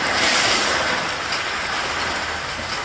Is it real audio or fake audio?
real